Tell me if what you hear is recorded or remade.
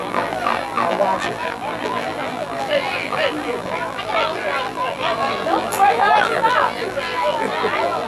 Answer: remade